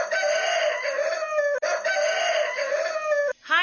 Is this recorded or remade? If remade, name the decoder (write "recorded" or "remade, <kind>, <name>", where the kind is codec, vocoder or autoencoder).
recorded